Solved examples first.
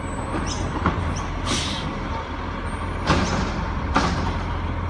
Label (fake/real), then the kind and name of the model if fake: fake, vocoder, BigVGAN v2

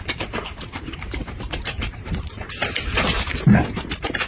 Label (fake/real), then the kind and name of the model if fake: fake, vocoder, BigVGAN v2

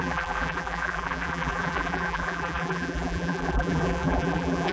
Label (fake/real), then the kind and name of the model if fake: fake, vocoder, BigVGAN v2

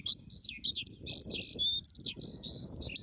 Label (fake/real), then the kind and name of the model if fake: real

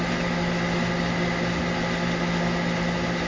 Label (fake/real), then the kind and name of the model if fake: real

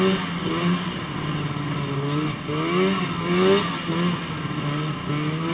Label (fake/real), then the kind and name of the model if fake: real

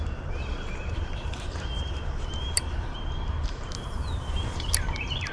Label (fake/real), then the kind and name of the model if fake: fake, vocoder, BigVGAN v2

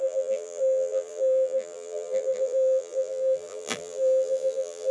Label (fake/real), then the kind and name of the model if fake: fake, vocoder, BigVGAN v2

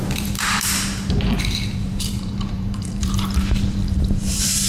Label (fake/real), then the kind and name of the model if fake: fake, vocoder, BigVGAN v2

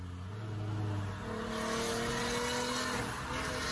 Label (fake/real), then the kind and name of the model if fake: real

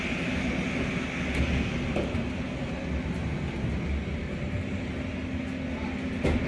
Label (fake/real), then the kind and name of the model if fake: real